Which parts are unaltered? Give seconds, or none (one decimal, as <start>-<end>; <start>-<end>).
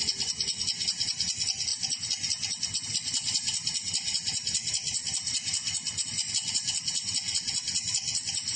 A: 0.0-8.6